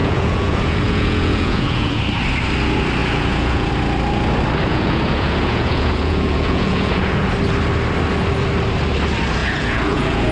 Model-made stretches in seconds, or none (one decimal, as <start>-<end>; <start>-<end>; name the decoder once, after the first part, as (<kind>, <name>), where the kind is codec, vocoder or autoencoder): 0.0-2.0 (vocoder, Vocos); 3.0-3.7; 4.7-7.3; 9.4-10.3